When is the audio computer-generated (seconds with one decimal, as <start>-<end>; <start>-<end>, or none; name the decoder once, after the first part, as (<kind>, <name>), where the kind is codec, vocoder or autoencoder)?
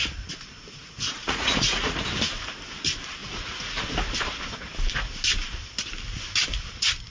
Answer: 0.8-2.0 (vocoder, Vocos); 3.2-3.8